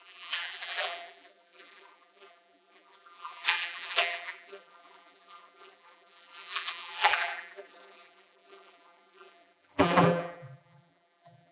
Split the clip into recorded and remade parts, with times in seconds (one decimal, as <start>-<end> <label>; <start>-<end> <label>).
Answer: 0.0-11.5 remade